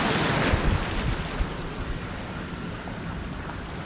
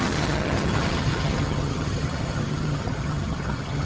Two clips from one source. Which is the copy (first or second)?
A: second